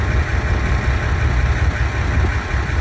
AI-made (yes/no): no